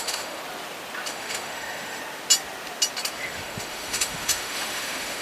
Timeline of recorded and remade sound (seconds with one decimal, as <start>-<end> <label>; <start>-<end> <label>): 0.0-0.4 remade; 0.4-1.1 recorded; 1.1-2.0 remade; 2.0-3.1 recorded; 3.1-5.2 remade